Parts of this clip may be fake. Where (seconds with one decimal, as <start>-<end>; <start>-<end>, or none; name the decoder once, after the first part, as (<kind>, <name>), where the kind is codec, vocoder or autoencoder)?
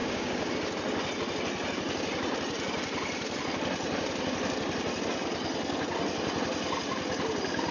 0.0-0.5 (codec, DAC)